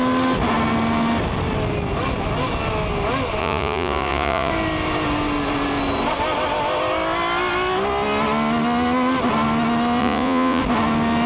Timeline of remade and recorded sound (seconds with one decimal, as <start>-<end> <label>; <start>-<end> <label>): 0.0-3.4 recorded; 3.4-4.5 remade; 4.5-10.0 recorded; 10.0-10.6 remade; 10.6-11.3 recorded